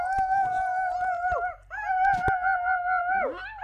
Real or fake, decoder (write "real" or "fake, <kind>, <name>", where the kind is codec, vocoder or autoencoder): real